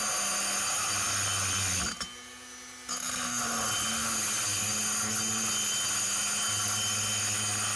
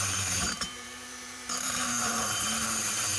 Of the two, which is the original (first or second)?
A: first